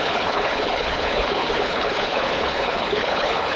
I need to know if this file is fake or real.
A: fake